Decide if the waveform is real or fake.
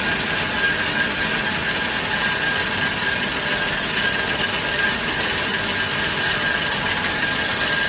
real